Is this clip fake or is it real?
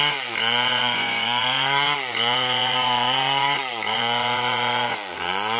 fake